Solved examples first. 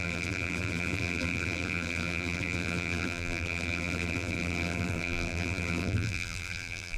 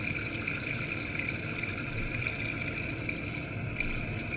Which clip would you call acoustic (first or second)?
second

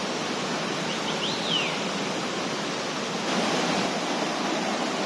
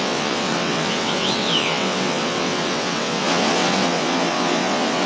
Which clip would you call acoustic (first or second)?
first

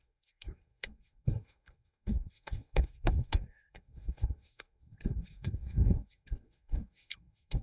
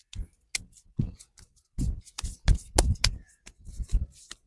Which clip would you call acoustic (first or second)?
second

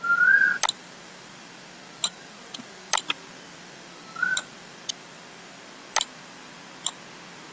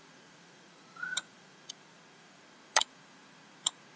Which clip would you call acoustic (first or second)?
first